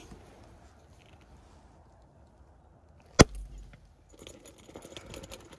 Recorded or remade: recorded